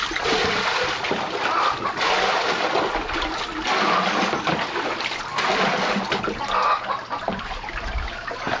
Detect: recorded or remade recorded